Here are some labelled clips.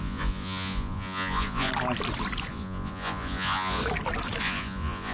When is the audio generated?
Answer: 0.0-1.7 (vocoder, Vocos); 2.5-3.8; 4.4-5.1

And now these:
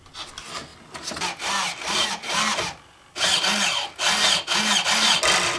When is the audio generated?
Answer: none

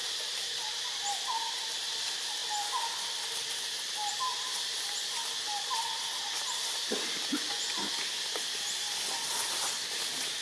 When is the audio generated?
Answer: 7.3-7.9 (vocoder, Vocos)

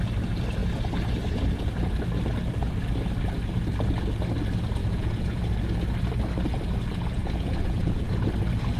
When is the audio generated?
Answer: 4.8-5.4 (vocoder, Vocos); 7.2-8.0